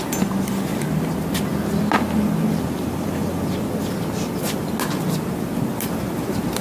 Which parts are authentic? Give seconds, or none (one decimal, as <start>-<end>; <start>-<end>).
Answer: 0.0-6.6